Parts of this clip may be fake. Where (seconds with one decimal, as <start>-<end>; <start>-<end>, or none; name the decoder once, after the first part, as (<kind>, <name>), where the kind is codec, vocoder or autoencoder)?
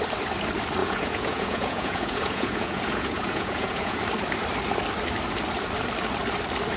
0.8-4.0 (vocoder, Vocos)